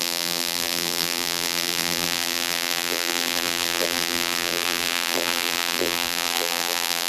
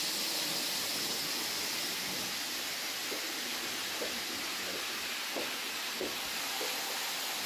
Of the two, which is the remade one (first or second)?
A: first